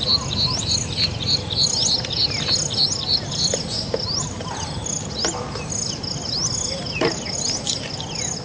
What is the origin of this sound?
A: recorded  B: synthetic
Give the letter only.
A